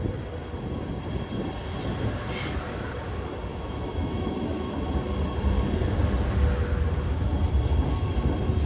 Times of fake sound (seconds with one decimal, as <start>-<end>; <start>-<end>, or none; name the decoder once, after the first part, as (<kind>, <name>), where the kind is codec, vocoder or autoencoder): 3.5-4.9 (autoencoder, DAC-VAE)